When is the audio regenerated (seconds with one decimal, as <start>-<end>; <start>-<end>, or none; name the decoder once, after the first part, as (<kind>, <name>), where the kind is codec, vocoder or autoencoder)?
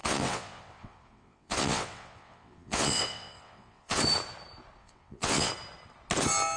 0.0-4.0 (vocoder, WaveNeXt); 4.8-5.5